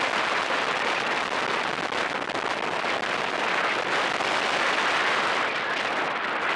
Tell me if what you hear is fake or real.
real